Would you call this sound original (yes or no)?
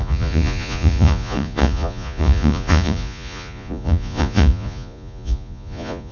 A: no